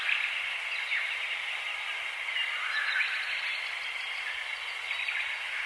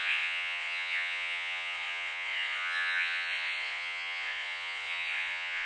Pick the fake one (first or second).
second